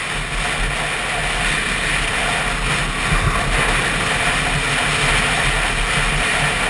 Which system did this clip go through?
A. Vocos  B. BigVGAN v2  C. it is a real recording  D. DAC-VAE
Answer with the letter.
C